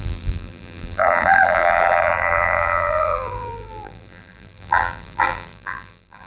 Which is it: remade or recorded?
remade